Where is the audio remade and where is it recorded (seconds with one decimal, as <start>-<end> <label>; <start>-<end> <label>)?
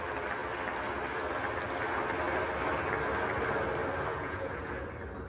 0.0-4.1 recorded; 4.1-4.7 remade; 4.7-5.3 recorded